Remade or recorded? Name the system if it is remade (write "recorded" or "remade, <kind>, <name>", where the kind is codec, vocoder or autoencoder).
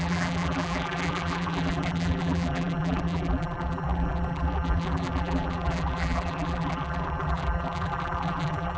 remade, vocoder, BigVGAN v2